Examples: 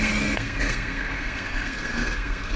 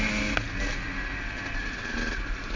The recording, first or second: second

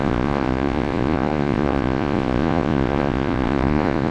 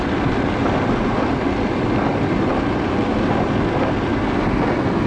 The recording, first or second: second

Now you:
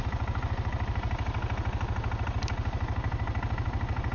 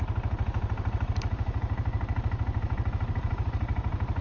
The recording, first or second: first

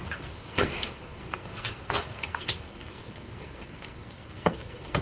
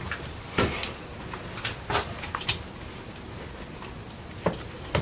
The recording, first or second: second